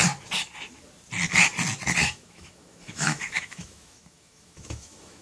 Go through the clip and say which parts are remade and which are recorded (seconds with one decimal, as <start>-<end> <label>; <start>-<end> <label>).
0.0-2.0 recorded; 2.0-5.2 remade